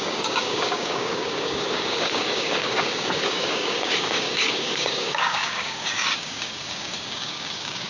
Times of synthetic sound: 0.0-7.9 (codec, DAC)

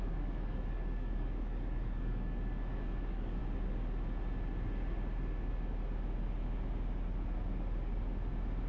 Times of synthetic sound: 0.0-3.4 (codec, DAC)

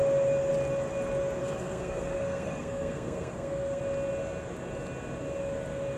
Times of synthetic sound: 1.4-3.8 (codec, SNAC)